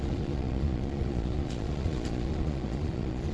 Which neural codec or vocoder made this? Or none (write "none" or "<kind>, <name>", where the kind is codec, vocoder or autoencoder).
vocoder, Vocos